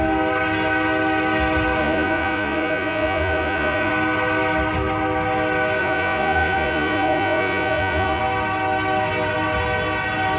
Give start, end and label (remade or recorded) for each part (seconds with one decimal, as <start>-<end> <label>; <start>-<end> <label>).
0.0-1.8 recorded; 1.8-3.9 remade; 3.9-5.8 recorded; 5.8-8.2 remade; 8.2-10.4 recorded